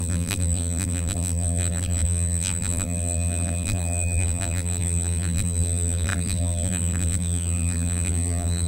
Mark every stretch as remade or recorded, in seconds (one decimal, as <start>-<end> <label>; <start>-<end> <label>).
0.0-8.7 remade